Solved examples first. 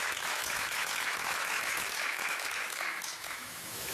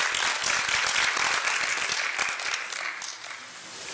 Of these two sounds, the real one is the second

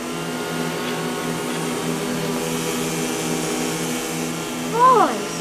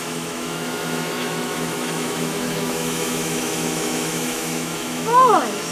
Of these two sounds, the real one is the first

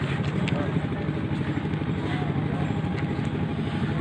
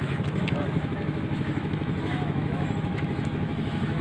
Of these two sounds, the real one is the first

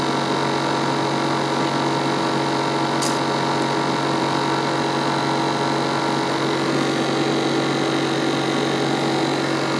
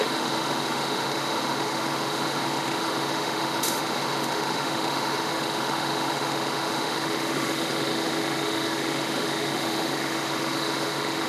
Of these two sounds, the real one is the first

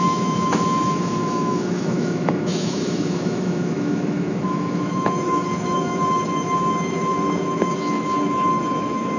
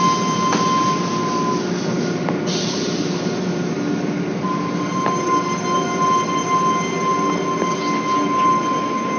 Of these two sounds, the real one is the second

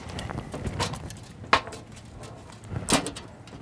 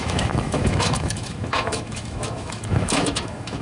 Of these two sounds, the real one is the first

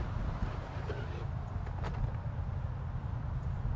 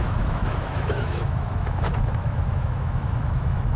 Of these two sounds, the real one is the first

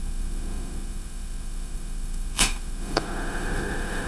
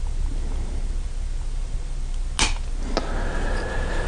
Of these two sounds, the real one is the second